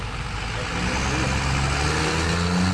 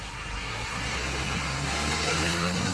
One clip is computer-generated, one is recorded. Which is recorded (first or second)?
first